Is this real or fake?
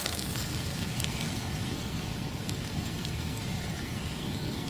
fake